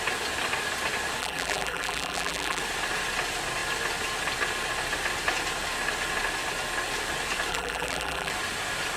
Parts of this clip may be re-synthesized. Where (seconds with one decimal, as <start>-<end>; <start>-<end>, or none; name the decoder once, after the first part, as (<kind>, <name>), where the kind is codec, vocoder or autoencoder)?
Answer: 1.2-2.6 (vocoder, BigVGAN v2); 7.5-8.3